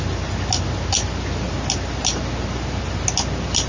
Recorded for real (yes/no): yes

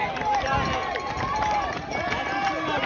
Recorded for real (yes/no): yes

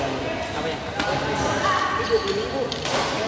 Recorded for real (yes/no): yes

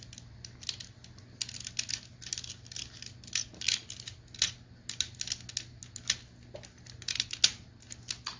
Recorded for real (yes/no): yes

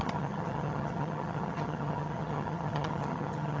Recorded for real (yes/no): no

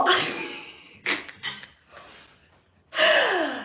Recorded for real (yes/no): yes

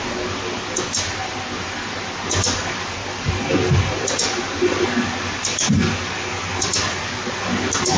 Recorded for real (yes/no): yes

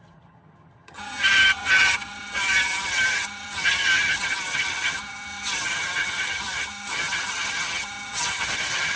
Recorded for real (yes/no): no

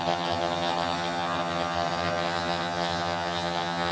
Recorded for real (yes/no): no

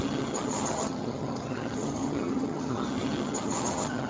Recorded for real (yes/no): no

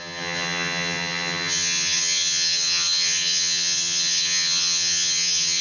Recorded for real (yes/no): no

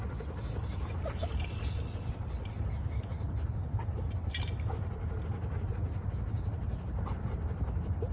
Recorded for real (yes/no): yes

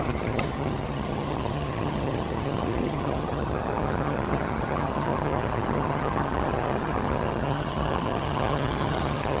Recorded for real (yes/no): no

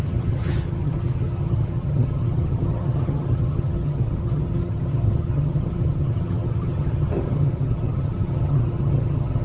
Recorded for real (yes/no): no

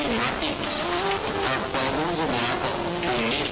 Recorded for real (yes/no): yes